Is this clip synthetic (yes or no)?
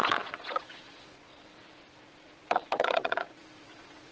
yes